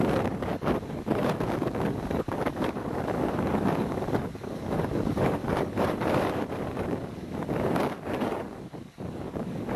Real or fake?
fake